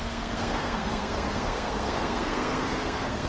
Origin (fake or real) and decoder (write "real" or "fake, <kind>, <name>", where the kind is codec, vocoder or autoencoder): fake, codec, SNAC